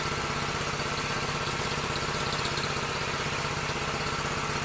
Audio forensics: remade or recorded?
recorded